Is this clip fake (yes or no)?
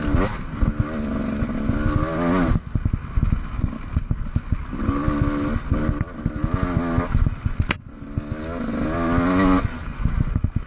no